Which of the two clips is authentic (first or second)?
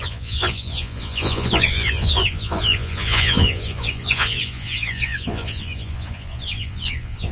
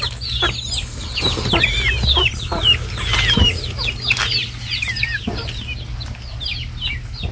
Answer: second